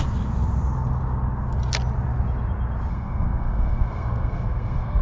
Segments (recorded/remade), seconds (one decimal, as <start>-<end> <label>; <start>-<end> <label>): 0.0-2.9 recorded; 2.9-5.0 remade

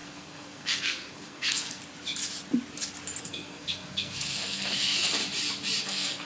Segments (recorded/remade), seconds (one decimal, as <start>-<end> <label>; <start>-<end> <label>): 0.0-1.8 remade; 1.8-3.2 recorded; 3.2-5.2 remade; 5.2-5.8 recorded; 5.8-6.3 remade

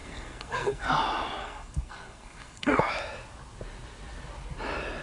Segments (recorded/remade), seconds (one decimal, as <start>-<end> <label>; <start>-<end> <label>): 0.0-0.9 remade; 0.9-1.4 recorded; 1.4-2.9 remade; 2.9-5.0 recorded

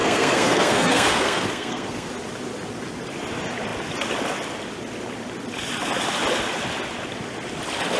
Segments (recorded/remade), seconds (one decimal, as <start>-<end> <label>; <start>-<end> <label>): 0.0-2.1 remade; 2.1-8.0 recorded

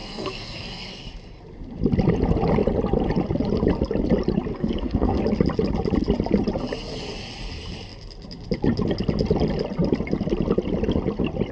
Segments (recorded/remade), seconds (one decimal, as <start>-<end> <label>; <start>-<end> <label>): 0.0-1.0 remade; 1.0-4.5 recorded; 4.5-5.2 remade; 5.2-11.5 recorded